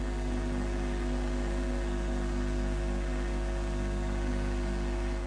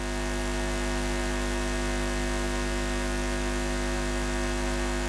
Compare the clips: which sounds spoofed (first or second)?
first